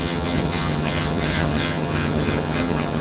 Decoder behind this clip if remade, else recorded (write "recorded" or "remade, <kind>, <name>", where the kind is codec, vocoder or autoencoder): remade, vocoder, HiFi-GAN